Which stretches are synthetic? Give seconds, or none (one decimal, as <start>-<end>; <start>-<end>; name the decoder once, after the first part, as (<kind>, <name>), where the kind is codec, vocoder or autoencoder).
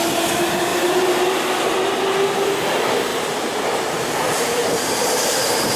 3.1-5.8 (vocoder, BigVGAN v2)